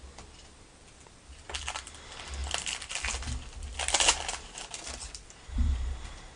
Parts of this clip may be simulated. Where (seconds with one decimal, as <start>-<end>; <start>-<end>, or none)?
none